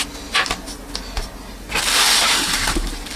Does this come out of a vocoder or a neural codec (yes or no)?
no